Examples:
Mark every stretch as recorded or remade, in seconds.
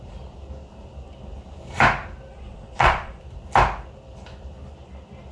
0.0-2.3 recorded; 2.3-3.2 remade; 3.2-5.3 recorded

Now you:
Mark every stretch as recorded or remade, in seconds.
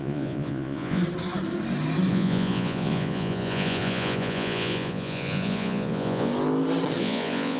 0.0-1.0 remade; 1.0-2.1 recorded; 2.1-6.3 remade; 6.3-7.0 recorded; 7.0-7.6 remade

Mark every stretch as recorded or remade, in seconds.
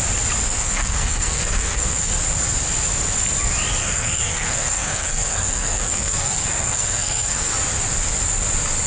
0.0-0.5 recorded; 0.5-2.1 remade; 2.1-3.8 recorded; 3.8-7.5 remade; 7.5-8.9 recorded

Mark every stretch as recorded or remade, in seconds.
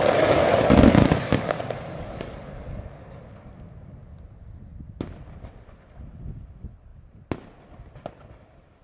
0.0-3.5 remade; 3.5-8.8 recorded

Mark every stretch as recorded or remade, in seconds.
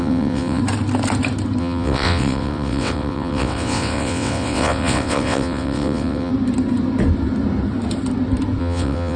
0.0-0.6 remade; 0.6-1.6 recorded; 1.6-6.3 remade; 6.3-8.6 recorded; 8.6-9.2 remade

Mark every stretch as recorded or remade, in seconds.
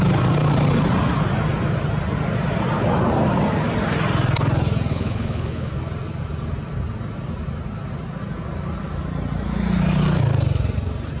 0.0-4.9 recorded; 4.9-5.7 remade; 5.7-11.2 recorded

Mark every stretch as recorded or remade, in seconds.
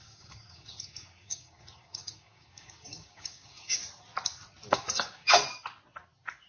0.0-3.8 remade; 3.8-4.7 recorded; 4.7-5.4 remade; 5.4-6.5 recorded